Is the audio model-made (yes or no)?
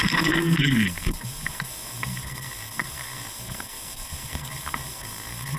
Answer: yes